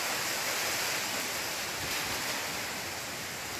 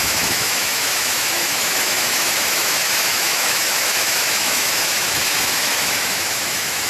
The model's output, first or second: second